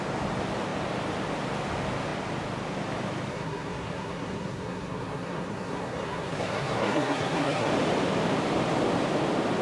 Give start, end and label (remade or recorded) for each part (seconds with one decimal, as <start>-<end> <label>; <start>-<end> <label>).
0.0-3.3 recorded; 3.3-7.7 remade; 7.7-9.6 recorded